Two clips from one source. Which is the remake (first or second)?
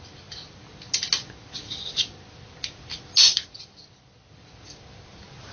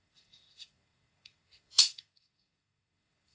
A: second